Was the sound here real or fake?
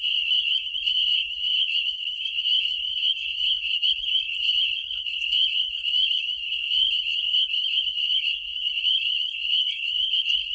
fake